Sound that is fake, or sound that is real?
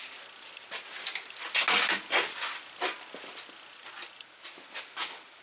real